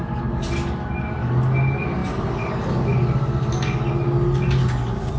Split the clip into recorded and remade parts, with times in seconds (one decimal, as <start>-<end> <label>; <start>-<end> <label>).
0.0-5.2 recorded